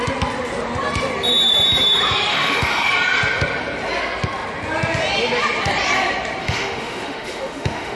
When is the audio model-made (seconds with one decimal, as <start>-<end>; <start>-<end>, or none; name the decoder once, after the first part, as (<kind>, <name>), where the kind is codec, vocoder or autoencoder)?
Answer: 2.3-2.9 (autoencoder, DAC-VAE); 6.4-8.0